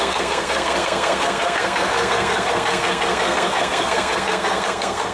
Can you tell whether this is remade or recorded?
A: remade